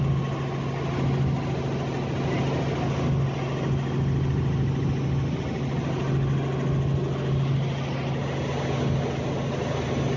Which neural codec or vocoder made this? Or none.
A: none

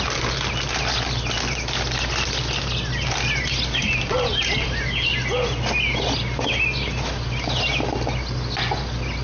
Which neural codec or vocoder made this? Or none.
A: none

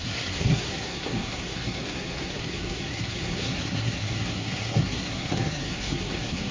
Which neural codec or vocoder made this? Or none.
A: codec, SNAC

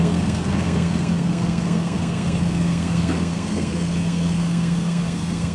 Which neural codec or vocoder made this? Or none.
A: codec, SNAC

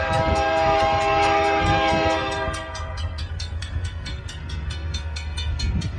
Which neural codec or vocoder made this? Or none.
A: codec, SNAC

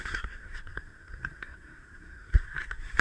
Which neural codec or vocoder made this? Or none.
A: codec, SNAC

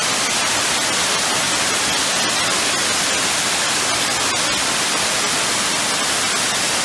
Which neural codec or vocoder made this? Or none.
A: none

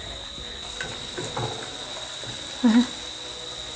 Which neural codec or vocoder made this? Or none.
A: none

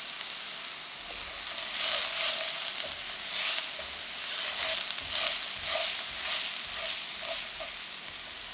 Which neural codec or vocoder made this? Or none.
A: none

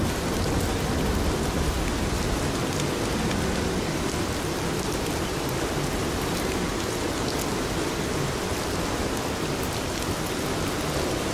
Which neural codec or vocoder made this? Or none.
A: none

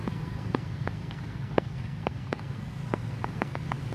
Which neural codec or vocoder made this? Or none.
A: codec, SNAC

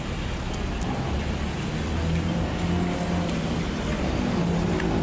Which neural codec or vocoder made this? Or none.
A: none